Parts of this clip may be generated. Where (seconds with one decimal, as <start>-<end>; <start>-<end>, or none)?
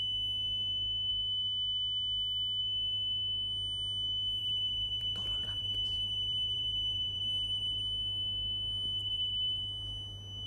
4.4-7.8; 9.0-9.6